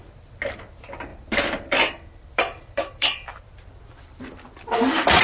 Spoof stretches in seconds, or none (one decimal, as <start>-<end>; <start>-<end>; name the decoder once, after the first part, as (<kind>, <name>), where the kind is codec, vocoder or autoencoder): 1.1-4.2 (vocoder, BigVGAN v2)